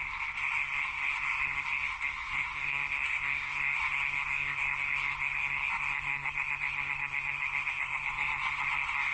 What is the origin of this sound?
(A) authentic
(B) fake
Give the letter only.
B